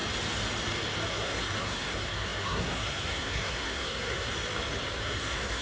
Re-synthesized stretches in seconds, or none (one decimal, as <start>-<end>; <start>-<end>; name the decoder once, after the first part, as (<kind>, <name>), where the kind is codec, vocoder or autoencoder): 1.1-4.3 (codec, SNAC); 5.0-5.6